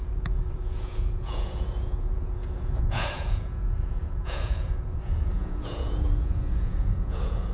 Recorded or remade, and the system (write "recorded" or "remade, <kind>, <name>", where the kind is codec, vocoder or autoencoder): remade, vocoder, Vocos